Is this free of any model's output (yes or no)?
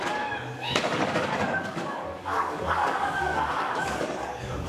no